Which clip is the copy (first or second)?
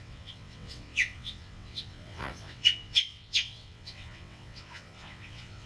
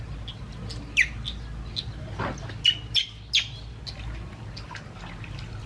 first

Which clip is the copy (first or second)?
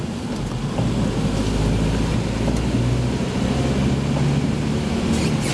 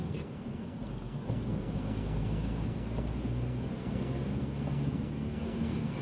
second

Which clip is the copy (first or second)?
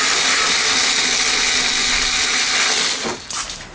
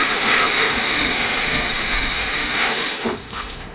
second